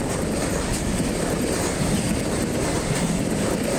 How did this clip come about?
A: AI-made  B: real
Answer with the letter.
A